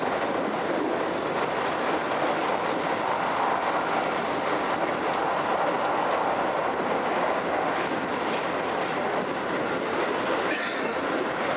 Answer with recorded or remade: recorded